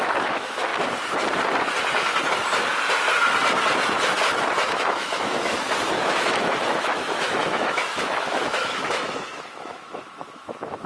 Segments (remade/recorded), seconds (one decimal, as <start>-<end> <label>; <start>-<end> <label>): 0.0-0.7 remade; 0.7-4.7 recorded; 4.7-10.9 remade